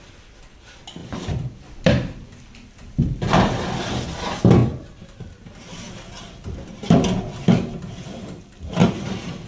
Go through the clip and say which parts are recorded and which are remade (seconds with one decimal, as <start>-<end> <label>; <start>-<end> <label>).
0.0-1.0 recorded; 1.0-3.9 remade; 3.9-8.8 recorded; 8.8-9.5 remade